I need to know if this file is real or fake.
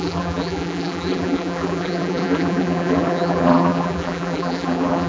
fake